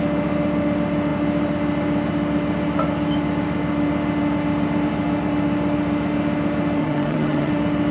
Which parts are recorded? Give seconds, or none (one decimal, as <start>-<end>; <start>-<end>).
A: 0.0-6.8; 7.5-7.9